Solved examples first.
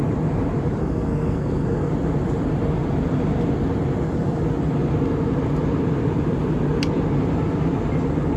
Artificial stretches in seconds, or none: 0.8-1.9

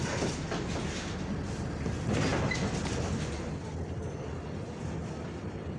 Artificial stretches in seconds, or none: none

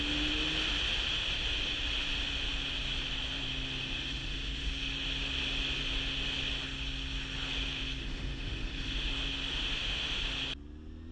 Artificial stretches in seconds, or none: 3.8-4.7; 8.0-9.1; 9.5-10.2

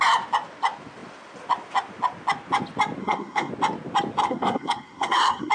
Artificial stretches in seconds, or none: 3.0-3.5; 4.2-5.5